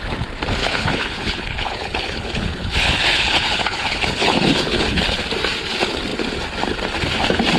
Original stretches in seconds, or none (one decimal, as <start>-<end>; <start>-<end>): 0.0-0.6; 5.2-7.6